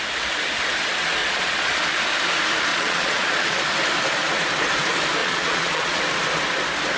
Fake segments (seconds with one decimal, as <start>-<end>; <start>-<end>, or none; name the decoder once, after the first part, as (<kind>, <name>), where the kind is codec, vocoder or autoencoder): 1.2-1.8 (vocoder, Vocos); 2.7-3.6; 5.2-6.0